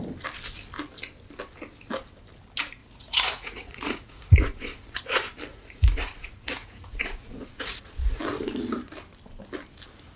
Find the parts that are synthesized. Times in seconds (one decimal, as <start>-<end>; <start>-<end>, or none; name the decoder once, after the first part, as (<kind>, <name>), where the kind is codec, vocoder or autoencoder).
2.8-5.0 (vocoder, Vocos); 5.5-8.2